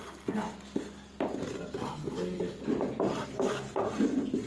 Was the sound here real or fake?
real